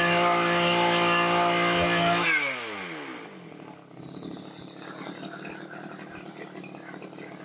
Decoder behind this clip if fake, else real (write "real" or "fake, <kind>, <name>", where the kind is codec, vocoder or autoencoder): real